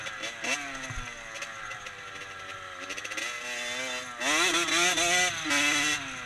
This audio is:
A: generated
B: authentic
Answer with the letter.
B